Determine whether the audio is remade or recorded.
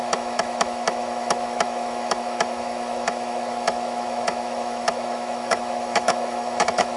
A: remade